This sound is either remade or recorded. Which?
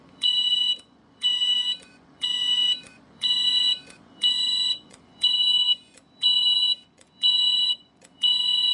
remade